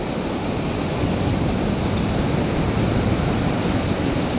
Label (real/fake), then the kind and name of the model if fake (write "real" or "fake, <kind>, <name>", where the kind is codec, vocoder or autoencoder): real